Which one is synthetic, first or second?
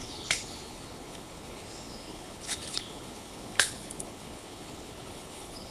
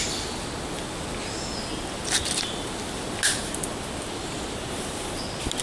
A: first